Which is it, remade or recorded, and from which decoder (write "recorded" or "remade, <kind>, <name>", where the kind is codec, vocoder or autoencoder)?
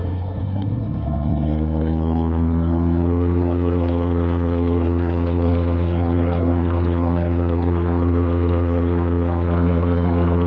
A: remade, codec, SNAC